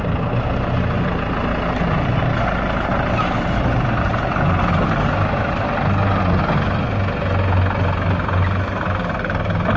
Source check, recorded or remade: recorded